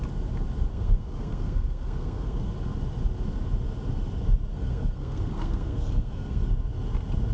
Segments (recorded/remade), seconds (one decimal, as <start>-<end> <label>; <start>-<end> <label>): 0.0-0.7 recorded; 0.7-2.5 remade; 2.5-4.5 recorded; 4.5-6.5 remade; 6.5-7.3 recorded